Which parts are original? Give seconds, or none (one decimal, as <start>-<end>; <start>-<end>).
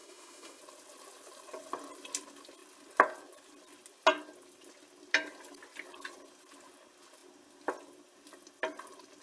0.6-9.2